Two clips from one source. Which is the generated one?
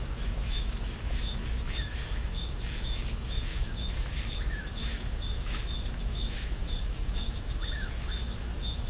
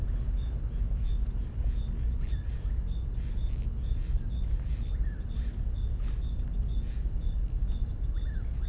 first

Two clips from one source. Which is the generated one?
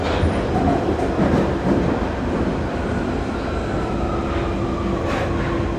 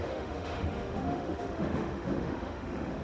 second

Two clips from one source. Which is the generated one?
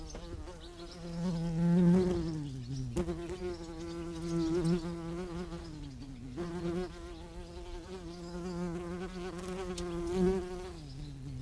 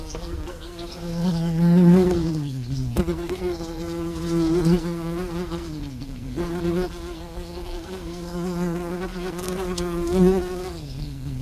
second